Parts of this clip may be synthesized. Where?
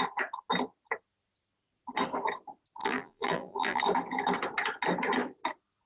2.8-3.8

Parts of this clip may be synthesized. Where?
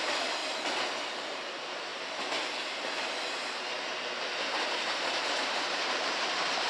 0.0-0.4; 1.1-1.9; 5.9-6.7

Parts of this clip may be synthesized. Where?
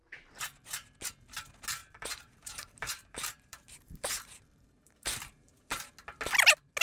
1.8-5.9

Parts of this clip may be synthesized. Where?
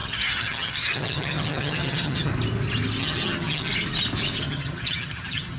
0.0-2.3; 3.0-3.7; 4.4-5.6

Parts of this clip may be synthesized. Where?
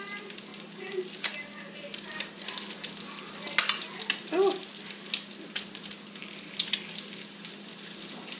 none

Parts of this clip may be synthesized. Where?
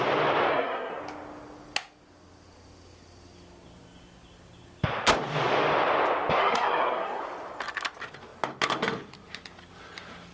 0.5-1.0; 6.4-7.2